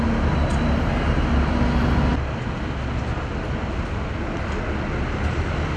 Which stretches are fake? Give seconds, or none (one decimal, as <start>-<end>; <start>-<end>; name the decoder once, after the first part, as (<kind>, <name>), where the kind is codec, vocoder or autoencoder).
none